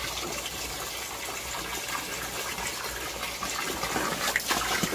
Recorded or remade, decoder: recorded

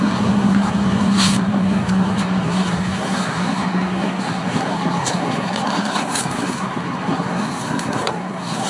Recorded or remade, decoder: remade, codec, SNAC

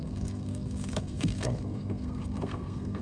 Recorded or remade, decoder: remade, codec, SNAC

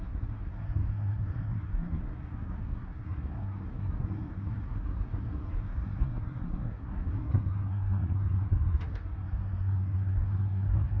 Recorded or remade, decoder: remade, codec, SNAC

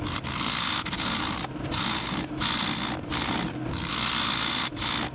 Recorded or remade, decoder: recorded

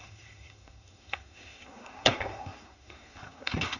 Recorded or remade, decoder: remade, codec, SNAC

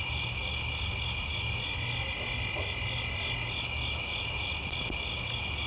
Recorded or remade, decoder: recorded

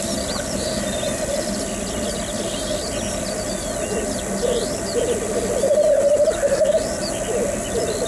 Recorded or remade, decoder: recorded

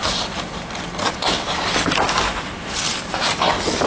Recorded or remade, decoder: recorded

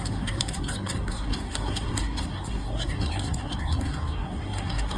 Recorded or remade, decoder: remade, codec, SNAC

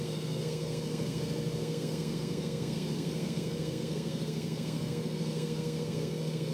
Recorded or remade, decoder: remade, codec, SNAC